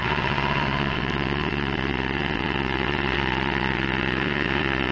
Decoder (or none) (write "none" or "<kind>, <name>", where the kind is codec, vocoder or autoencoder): vocoder, WaveNeXt